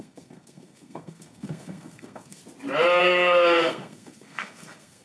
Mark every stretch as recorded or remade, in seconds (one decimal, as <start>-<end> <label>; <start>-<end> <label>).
0.0-2.4 remade; 2.4-3.0 recorded; 3.0-5.0 remade